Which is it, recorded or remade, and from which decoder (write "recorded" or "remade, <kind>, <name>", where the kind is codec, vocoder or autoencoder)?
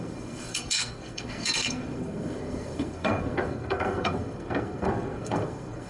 remade, codec, SNAC